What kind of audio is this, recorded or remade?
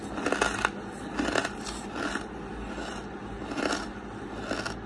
recorded